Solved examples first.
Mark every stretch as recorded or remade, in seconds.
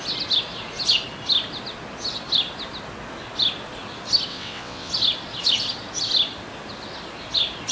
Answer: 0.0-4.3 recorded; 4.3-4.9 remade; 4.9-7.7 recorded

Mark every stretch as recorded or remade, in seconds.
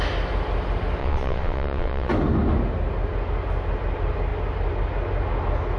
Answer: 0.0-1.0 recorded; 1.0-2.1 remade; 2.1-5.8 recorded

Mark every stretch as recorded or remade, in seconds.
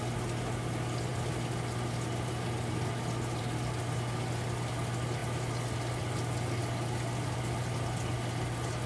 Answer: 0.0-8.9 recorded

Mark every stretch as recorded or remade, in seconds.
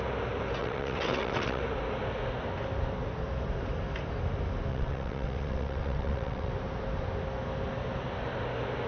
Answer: 0.0-0.6 recorded; 0.6-1.6 remade; 1.6-4.7 recorded; 4.7-6.5 remade; 6.5-8.9 recorded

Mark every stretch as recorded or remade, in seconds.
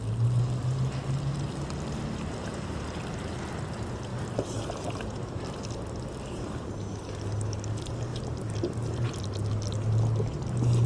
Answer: 0.0-10.9 recorded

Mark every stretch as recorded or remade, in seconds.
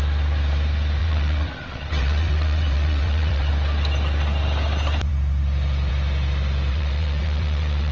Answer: 0.0-1.0 recorded; 1.0-3.5 remade; 3.5-6.7 recorded; 6.7-7.9 remade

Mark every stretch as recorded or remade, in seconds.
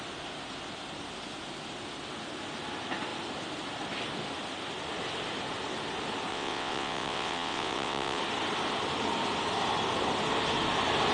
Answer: 0.0-6.3 recorded; 6.3-8.2 remade; 8.2-11.1 recorded